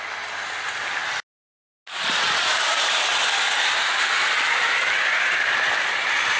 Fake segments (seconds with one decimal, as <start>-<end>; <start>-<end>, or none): none